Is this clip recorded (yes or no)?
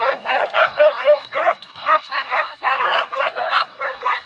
no